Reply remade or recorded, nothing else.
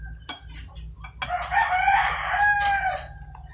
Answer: recorded